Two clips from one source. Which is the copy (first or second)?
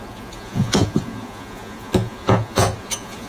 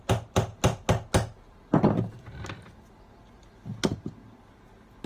first